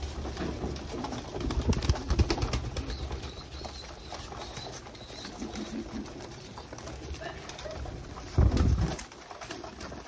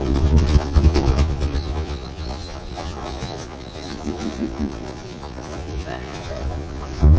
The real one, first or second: first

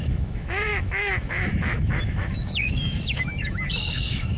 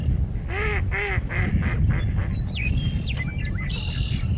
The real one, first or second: second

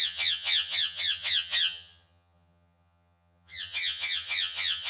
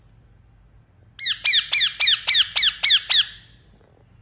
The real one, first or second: second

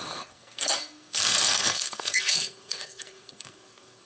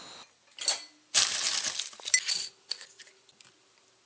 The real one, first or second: second